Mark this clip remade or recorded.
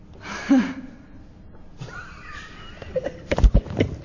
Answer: recorded